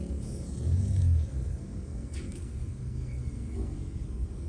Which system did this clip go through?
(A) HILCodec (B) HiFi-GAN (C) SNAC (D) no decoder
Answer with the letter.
C